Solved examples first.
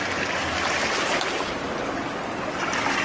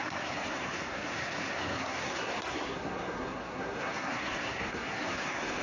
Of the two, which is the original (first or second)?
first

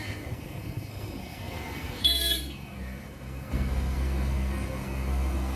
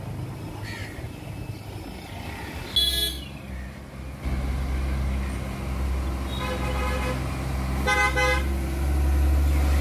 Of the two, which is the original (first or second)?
second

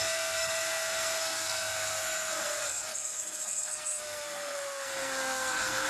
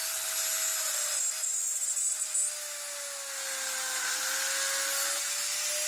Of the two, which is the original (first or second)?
second